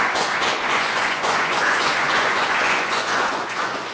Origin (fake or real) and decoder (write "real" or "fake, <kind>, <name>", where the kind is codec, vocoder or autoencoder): fake, vocoder, Vocos